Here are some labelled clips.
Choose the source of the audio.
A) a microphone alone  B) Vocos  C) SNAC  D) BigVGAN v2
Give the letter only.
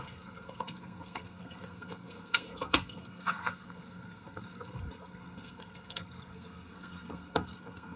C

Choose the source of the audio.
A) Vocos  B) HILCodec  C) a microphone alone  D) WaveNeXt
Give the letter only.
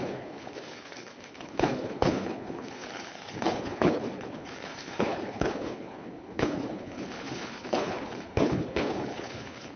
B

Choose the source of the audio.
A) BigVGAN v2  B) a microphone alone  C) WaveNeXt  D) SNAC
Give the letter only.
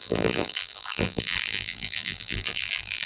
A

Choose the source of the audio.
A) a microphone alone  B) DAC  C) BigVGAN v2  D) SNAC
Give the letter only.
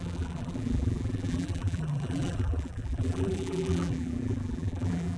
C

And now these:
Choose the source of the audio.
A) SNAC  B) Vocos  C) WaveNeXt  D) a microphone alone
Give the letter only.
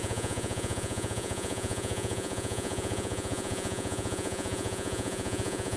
B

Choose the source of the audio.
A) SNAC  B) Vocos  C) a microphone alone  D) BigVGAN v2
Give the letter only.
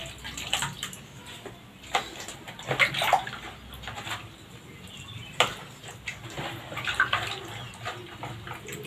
C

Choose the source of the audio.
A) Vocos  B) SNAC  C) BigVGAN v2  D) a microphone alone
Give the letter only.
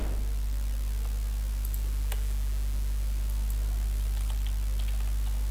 D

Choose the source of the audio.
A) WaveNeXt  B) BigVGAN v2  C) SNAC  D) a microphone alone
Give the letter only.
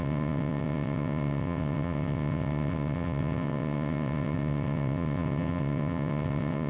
A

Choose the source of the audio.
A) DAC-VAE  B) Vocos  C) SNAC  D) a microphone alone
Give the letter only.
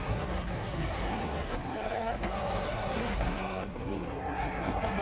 C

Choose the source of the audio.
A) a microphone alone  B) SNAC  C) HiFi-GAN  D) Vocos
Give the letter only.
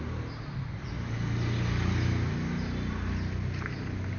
A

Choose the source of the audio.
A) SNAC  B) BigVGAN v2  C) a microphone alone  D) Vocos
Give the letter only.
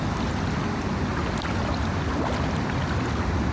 C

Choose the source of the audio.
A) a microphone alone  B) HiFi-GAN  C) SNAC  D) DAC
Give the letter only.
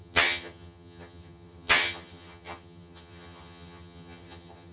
B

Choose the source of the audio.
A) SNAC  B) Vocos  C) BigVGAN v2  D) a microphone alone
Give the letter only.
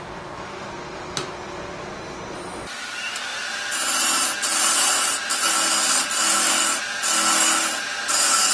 D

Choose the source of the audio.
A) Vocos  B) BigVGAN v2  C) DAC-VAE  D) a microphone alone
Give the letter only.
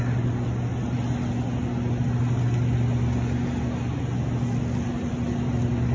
D